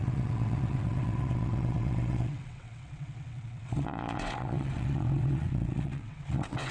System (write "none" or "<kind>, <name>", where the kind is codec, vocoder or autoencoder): vocoder, WaveNeXt